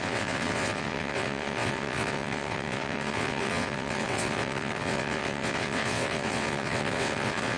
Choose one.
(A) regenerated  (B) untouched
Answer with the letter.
A